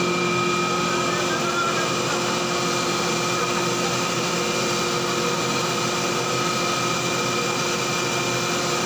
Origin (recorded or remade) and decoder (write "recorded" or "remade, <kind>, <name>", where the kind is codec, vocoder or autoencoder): recorded